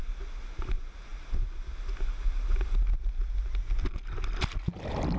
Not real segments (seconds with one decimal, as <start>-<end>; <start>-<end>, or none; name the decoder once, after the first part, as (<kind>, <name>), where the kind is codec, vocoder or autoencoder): none